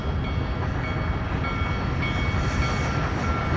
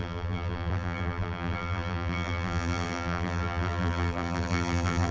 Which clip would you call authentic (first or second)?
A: first